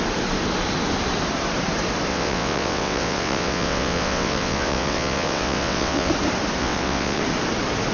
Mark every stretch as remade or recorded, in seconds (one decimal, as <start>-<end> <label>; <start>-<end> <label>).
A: 0.0-2.1 recorded; 2.1-6.1 remade; 6.1-6.6 recorded; 6.6-7.2 remade; 7.2-7.9 recorded